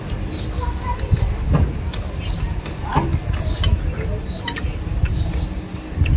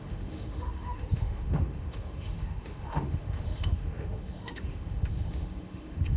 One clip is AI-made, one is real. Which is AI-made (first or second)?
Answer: second